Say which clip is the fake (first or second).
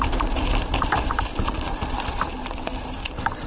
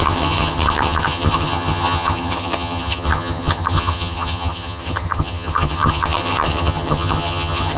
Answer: second